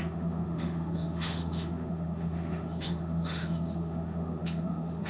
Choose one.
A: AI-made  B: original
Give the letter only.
A